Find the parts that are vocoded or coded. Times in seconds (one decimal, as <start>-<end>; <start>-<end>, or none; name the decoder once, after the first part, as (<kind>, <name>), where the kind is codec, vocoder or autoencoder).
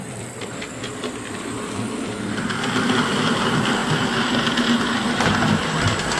0.0-6.2 (vocoder, BigVGAN v2)